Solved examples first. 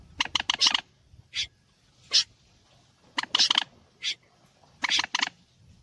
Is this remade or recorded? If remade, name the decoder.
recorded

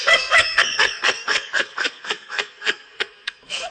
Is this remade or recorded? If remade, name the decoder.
remade, codec, SNAC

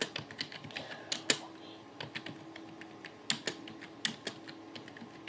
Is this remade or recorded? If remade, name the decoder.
recorded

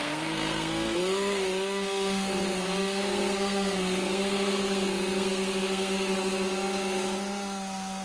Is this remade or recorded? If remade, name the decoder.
remade, codec, SNAC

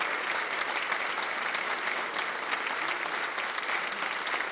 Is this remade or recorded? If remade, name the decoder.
recorded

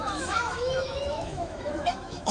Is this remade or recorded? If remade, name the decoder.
remade, autoencoder, DAC-VAE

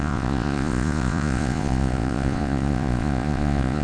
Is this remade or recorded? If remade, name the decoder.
remade, vocoder, Vocos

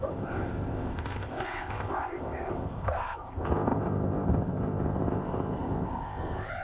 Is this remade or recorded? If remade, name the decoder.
remade, codec, ZipCodec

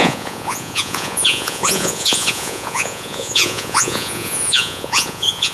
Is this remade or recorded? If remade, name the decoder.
remade, vocoder, Vocos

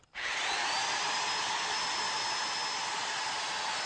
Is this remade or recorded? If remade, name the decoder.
recorded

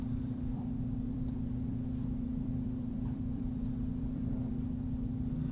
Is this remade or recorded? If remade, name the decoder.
remade, vocoder, BigVGAN v2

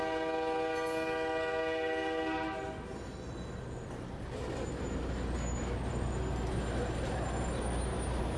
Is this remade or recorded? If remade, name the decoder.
recorded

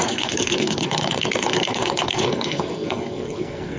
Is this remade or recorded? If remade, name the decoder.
remade, codec, SNAC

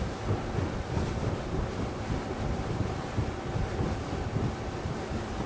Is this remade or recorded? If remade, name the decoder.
recorded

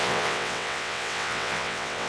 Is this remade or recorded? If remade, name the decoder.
remade, vocoder, WaveNeXt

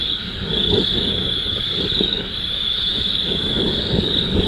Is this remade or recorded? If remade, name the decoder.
remade, codec, DAC